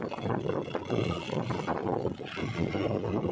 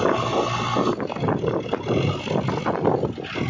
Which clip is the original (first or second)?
second